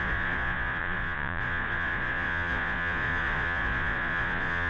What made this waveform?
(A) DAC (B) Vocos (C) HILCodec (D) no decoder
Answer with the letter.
B